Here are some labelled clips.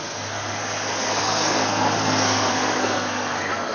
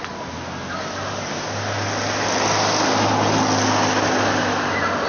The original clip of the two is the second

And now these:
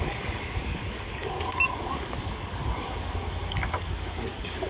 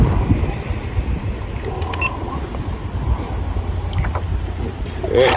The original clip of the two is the second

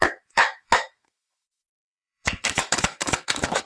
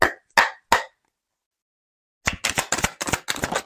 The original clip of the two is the second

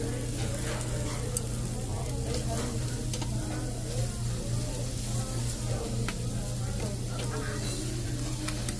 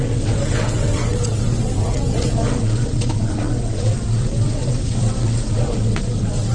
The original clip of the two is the first